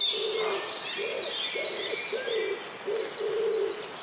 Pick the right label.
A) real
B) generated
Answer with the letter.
A